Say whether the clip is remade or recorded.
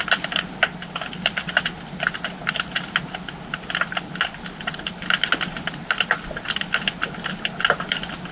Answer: recorded